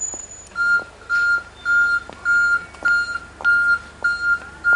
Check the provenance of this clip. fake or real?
real